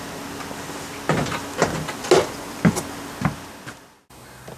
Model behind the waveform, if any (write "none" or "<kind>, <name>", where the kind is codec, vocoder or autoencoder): none